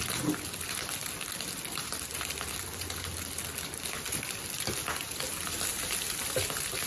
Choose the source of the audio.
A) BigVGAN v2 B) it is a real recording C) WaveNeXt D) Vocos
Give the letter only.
B